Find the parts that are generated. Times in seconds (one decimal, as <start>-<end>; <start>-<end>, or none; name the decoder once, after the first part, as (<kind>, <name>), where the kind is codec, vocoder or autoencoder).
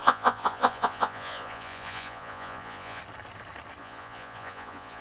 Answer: 0.0-3.0 (vocoder, Vocos); 3.8-5.0